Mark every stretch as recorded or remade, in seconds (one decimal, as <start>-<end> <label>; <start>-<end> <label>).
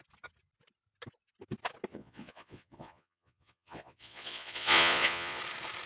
0.0-1.9 recorded; 1.9-5.4 remade; 5.4-5.9 recorded